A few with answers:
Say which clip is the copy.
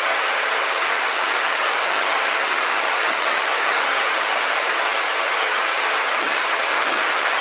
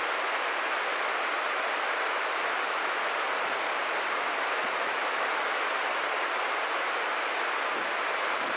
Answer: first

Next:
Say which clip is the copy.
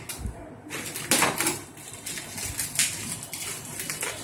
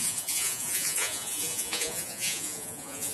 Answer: second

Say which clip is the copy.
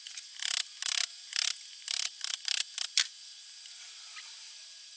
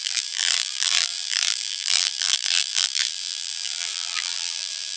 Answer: second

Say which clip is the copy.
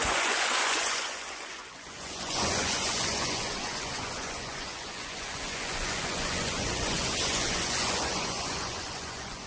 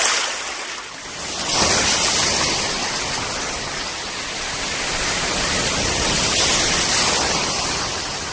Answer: first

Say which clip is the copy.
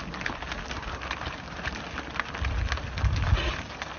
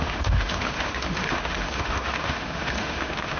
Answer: second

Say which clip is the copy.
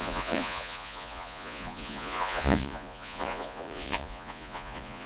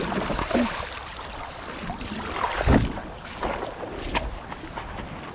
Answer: first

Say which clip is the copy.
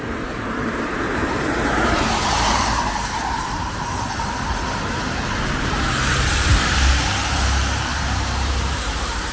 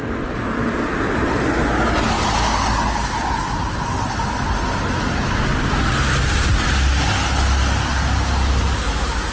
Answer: first